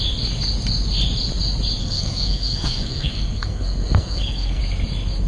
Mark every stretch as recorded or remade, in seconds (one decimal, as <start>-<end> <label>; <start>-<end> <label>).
0.0-1.8 recorded; 1.8-4.6 remade; 4.6-5.3 recorded

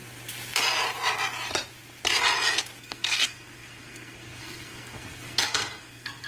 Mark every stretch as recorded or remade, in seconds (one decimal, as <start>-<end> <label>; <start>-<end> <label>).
0.0-2.8 recorded; 2.8-6.3 remade